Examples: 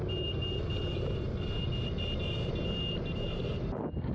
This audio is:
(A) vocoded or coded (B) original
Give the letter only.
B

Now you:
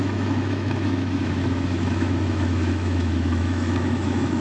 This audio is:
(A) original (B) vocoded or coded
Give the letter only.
B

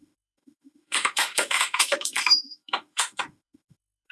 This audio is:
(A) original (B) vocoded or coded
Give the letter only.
B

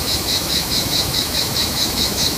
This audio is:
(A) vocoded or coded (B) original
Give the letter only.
A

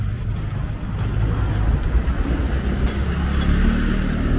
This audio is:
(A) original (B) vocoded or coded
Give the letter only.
A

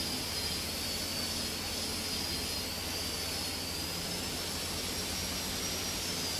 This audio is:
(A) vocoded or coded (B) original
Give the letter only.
B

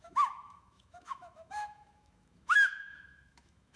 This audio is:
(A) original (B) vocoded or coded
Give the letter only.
B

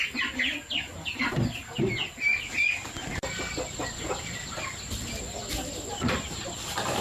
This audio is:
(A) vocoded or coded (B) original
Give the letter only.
B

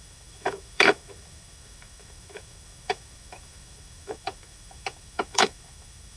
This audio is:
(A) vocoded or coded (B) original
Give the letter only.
A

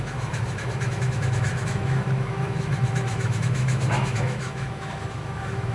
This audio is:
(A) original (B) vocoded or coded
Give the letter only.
B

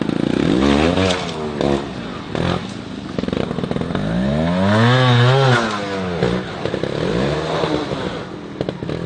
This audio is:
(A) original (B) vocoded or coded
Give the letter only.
A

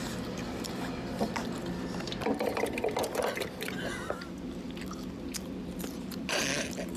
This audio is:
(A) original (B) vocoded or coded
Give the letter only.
A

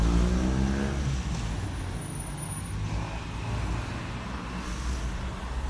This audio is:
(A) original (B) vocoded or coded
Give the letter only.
A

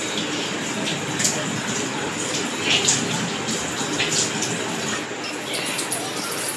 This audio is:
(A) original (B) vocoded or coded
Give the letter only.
A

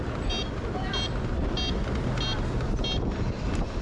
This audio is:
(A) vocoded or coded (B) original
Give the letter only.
B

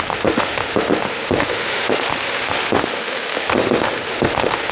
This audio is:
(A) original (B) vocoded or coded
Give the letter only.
B